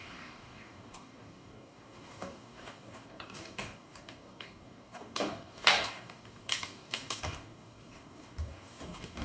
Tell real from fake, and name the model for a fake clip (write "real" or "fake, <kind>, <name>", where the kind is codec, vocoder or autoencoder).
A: fake, codec, DAC